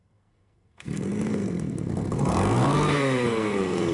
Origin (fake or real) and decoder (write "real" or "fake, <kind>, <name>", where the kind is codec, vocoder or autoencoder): fake, codec, SNAC